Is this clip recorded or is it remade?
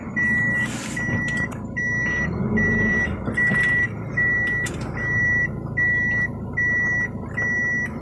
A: recorded